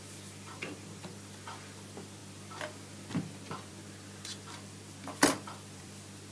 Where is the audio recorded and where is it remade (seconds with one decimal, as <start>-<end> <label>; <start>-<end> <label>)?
0.0-2.2 remade; 2.2-3.7 recorded; 3.7-6.3 remade